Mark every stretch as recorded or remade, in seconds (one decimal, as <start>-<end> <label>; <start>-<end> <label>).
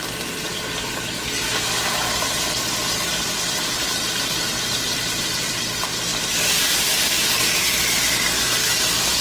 0.0-6.1 recorded; 6.1-7.7 remade; 7.7-9.2 recorded